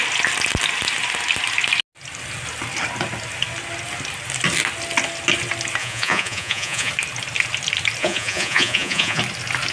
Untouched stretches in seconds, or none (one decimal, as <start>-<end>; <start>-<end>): 0.0-5.8; 6.9-8.0; 9.2-9.7